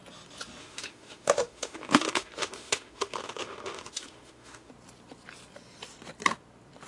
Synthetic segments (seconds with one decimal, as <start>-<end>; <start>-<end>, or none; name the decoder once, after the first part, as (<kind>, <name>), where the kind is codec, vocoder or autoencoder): 0.6-4.7 (autoencoder, DAC-VAE)